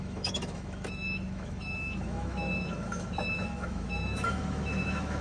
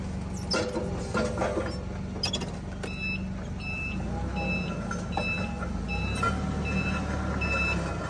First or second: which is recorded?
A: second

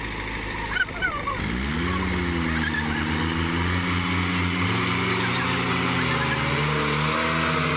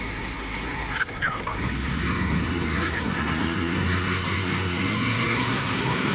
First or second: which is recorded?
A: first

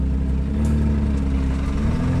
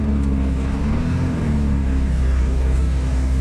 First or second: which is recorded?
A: first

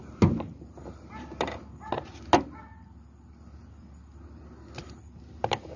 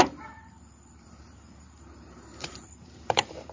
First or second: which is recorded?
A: first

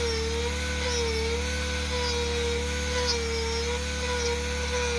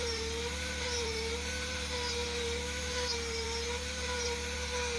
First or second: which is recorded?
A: first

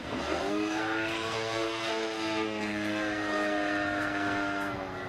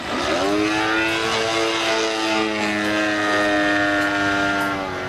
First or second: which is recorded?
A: second